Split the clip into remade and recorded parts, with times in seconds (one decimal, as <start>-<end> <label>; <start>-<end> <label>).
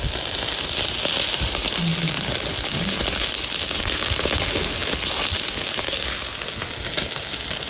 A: 0.0-7.7 recorded